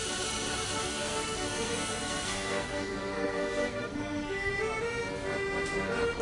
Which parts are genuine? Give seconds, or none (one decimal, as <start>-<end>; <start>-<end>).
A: 0.0-0.8; 4.5-6.2